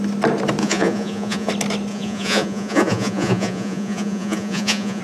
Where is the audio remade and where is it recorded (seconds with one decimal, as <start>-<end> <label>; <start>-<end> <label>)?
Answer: 0.0-0.6 recorded; 0.6-1.5 remade; 1.5-1.9 recorded; 1.9-5.0 remade